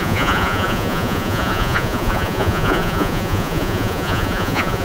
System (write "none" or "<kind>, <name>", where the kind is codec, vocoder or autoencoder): vocoder, Vocos